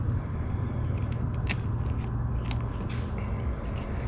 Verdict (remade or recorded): recorded